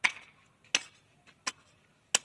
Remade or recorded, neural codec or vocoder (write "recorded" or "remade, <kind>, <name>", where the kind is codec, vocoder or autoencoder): recorded